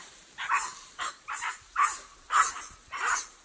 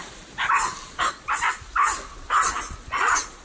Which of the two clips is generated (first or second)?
first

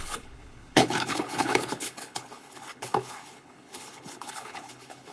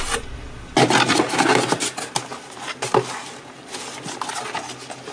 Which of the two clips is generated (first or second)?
first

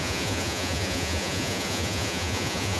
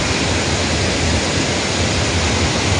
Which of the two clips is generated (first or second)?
first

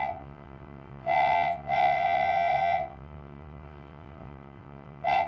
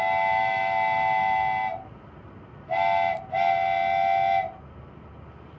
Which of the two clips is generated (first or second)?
first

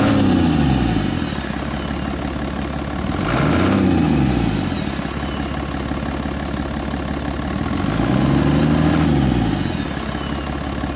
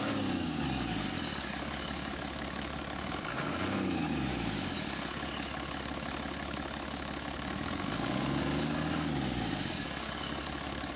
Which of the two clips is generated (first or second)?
second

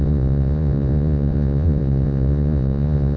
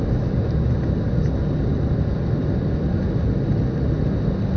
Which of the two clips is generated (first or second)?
first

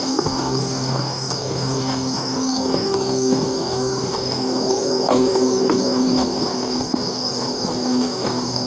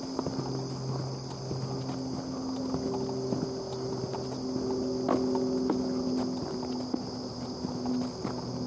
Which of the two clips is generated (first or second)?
first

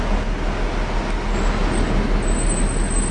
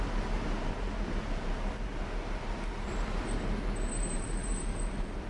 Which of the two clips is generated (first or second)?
second